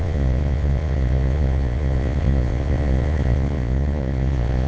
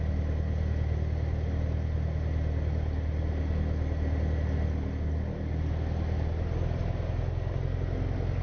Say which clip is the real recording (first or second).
second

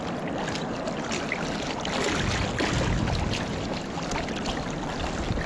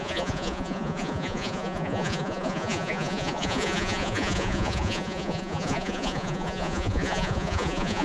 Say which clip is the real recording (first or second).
first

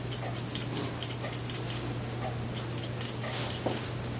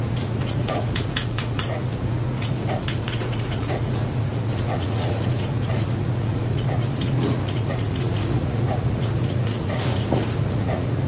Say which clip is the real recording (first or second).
first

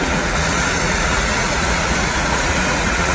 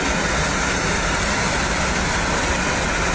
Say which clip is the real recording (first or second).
second